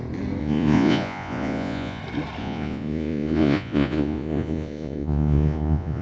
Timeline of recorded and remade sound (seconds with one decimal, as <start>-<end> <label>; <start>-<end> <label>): 0.0-0.4 recorded; 0.4-2.0 remade; 2.0-2.4 recorded; 2.4-6.0 remade